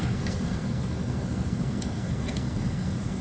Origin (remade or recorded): remade